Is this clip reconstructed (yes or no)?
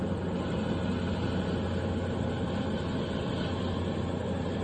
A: no